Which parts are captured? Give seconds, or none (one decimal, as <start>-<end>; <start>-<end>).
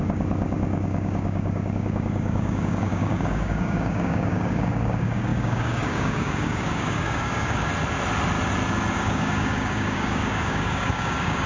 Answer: 7.7-8.9